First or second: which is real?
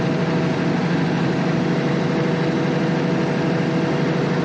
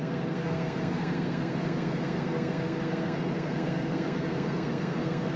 first